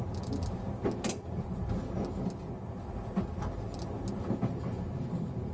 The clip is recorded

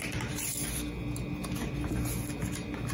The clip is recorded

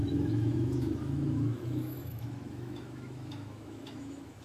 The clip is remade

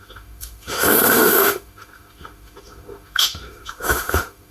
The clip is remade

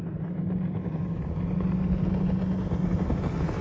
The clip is recorded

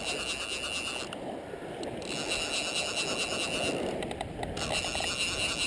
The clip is recorded